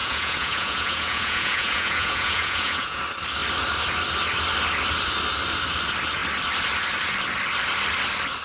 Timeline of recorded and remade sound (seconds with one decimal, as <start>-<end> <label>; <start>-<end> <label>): 0.0-3.0 remade; 3.0-8.4 recorded